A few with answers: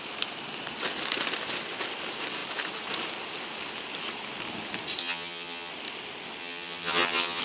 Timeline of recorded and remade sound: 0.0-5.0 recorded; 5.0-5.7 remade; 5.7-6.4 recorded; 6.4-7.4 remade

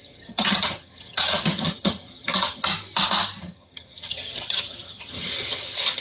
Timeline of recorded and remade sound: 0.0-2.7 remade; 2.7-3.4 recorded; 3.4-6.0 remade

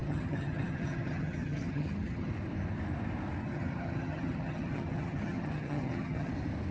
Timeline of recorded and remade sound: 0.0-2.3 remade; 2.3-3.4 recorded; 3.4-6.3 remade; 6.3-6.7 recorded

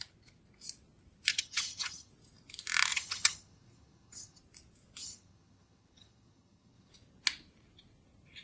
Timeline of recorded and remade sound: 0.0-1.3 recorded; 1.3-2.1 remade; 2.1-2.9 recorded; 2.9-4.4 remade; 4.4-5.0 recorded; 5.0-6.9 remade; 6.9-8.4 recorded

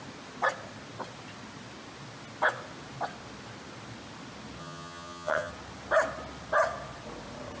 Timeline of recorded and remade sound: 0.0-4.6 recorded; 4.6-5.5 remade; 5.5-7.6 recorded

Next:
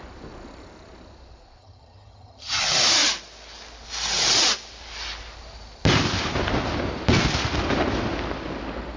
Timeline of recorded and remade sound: 0.0-1.6 recorded; 1.6-2.6 remade; 2.6-9.0 recorded

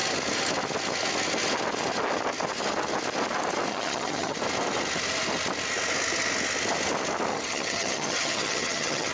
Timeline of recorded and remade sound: 0.0-3.7 recorded; 3.7-4.4 remade; 4.4-7.3 recorded; 7.3-9.1 remade

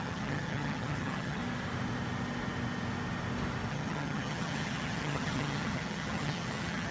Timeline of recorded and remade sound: 0.0-1.4 remade; 1.4-3.7 recorded; 3.7-6.9 remade